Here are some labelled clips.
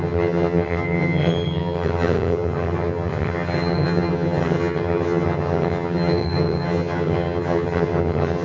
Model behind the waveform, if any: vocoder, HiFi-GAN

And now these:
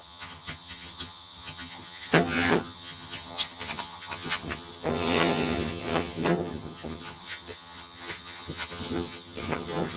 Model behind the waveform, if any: vocoder, HiFi-GAN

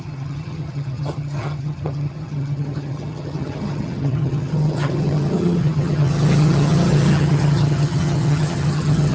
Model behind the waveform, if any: vocoder, HiFi-GAN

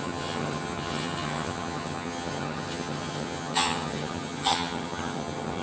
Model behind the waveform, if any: vocoder, HiFi-GAN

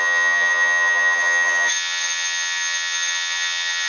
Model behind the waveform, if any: vocoder, HiFi-GAN